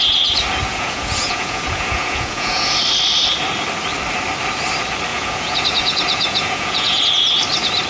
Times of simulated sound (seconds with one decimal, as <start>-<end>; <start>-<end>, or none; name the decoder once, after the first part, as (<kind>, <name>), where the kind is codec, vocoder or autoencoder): 0.7-2.8 (vocoder, Vocos); 5.1-7.0

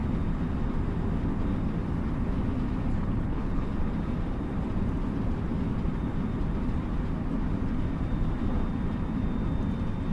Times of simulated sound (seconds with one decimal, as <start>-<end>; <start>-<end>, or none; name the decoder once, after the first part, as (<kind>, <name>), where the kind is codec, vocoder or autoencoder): 2.9-3.7 (codec, HILCodec)

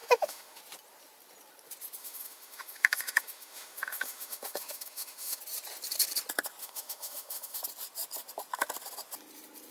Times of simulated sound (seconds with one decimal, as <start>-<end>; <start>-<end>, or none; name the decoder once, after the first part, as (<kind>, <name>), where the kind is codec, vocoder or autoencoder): 0.0-0.6 (autoencoder, DAC-VAE); 2.0-5.4; 6.6-7.6

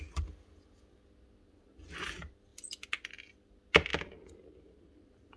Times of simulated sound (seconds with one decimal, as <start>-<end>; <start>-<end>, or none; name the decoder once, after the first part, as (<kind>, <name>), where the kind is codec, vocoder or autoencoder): none

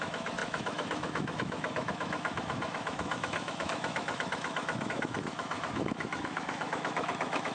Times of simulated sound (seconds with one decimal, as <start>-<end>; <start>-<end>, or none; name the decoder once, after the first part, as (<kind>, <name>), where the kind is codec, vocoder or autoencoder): 0.0-7.5 (autoencoder, DAC-VAE)

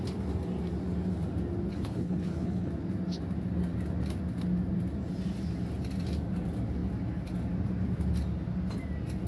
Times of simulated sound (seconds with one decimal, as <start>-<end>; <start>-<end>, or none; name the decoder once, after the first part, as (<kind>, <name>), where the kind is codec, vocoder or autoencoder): 1.7-2.7 (codec, HILCodec)

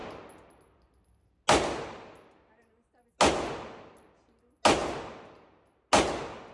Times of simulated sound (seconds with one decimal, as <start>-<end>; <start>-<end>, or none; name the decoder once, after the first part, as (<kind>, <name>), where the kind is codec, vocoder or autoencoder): none